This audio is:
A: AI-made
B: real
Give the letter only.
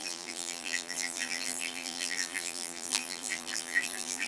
A